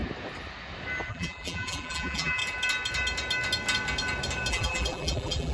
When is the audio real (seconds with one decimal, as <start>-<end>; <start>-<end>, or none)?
0.0-1.1; 2.4-4.5